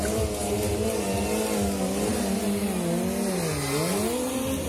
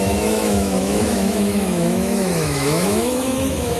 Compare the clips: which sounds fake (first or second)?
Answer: second